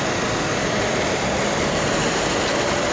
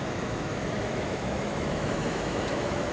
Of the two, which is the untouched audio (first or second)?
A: first